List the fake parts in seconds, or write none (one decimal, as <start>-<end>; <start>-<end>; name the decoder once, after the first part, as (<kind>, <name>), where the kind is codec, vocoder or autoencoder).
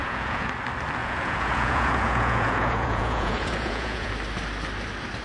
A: 0.0-0.5 (vocoder, Vocos); 1.0-4.1